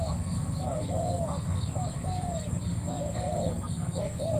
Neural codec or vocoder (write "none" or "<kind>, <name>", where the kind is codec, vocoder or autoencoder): codec, SNAC